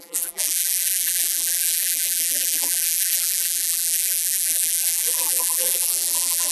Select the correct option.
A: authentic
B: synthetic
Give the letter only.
B